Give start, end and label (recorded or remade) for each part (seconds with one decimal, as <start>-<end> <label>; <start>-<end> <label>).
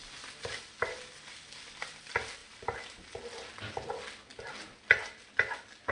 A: 0.0-2.4 recorded; 2.4-3.2 remade; 3.2-5.9 recorded